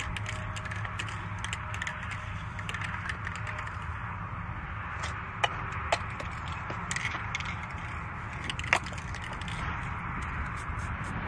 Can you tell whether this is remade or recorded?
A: recorded